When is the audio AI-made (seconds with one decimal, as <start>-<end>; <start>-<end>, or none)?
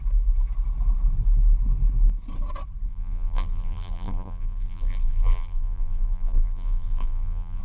2.9-7.6